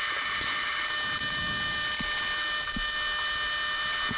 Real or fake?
real